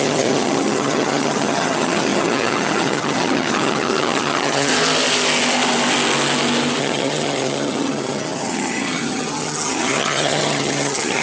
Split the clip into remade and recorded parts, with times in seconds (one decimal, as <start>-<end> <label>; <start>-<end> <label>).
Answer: 0.0-4.7 remade; 4.7-6.8 recorded; 6.8-11.2 remade